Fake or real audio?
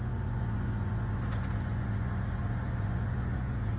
fake